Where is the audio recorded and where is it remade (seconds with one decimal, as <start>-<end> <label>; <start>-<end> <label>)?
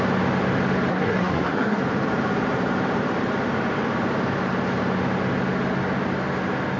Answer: 0.0-0.9 recorded; 0.9-1.8 remade; 1.8-6.8 recorded